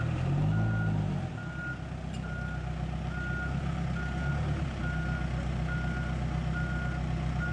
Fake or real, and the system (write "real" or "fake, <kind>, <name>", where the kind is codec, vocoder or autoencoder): real